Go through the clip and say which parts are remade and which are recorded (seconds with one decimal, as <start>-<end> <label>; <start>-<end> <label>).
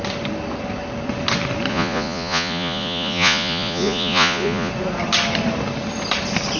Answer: 0.0-1.7 recorded; 1.7-4.7 remade; 4.7-6.6 recorded